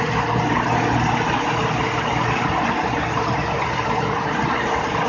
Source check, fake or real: real